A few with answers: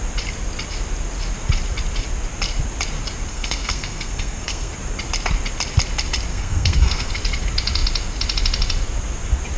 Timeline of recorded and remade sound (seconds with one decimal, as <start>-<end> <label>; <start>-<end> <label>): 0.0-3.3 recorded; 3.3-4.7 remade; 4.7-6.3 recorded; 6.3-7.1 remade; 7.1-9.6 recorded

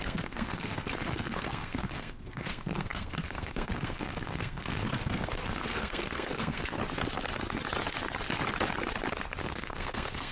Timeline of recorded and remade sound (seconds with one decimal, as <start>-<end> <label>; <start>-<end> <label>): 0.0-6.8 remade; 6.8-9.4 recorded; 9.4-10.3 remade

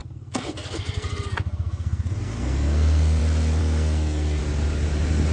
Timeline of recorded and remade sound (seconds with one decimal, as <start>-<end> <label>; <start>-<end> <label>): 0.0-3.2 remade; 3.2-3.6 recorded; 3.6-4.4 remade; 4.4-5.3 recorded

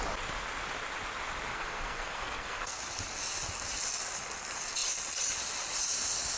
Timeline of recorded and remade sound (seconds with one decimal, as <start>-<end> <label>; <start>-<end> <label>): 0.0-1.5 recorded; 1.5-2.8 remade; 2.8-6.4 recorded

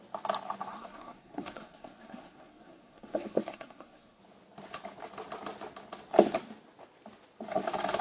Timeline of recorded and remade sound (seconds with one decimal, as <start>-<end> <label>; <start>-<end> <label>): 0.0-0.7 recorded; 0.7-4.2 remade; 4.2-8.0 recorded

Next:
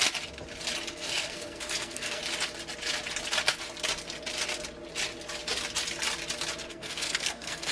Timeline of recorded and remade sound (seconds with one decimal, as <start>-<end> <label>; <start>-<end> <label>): 0.0-0.9 recorded; 0.9-2.2 remade; 2.2-6.7 recorded; 6.7-7.7 remade